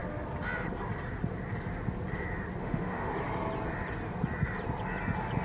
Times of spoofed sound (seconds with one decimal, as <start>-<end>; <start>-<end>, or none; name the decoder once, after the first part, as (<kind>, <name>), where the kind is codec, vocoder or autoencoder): 2.6-3.1 (autoencoder, DAC-VAE)